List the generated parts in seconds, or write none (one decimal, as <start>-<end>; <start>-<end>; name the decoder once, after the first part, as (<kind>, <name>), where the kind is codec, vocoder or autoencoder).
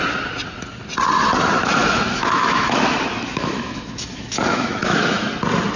1.8-5.3 (autoencoder, DAC-VAE)